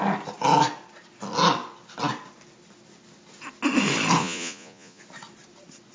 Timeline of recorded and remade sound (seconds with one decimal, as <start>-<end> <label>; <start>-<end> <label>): 0.0-4.2 recorded; 4.2-5.0 remade; 5.0-5.9 recorded